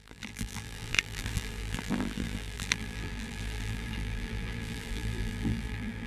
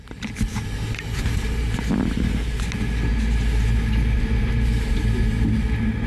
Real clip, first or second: second